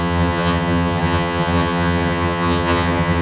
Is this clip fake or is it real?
fake